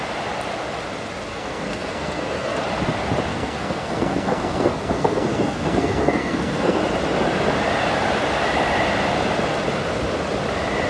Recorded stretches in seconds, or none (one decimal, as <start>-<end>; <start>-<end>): 0.0-1.3; 2.6-3.3; 6.8-10.9